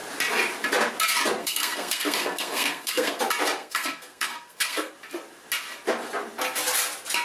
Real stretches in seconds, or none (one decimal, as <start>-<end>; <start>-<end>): 0.0-1.4; 3.2-3.6; 4.9-7.2